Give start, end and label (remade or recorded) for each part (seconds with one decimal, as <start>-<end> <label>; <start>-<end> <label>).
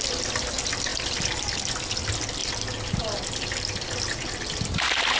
0.0-5.2 recorded